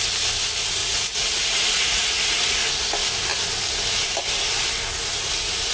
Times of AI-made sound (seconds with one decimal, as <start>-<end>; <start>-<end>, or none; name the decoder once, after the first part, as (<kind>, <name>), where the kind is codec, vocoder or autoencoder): 0.8-2.7 (vocoder, Vocos)

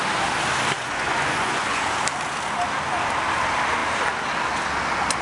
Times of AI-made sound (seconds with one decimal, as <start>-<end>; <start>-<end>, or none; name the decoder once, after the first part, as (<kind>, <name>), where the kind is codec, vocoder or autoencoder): 0.8-1.9 (vocoder, Vocos)

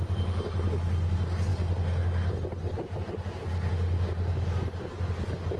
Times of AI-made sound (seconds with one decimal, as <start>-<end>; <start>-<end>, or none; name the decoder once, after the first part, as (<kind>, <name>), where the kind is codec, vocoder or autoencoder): none